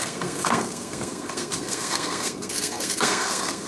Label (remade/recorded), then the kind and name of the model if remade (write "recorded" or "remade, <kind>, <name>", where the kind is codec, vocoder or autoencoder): remade, codec, SNAC